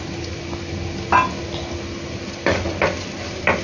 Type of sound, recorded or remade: recorded